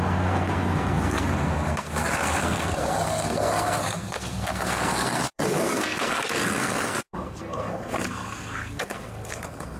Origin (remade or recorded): remade